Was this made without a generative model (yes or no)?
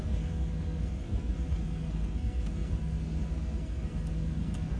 no